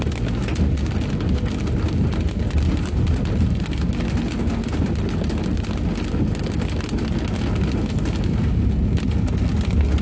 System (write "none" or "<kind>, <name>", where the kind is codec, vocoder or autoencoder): none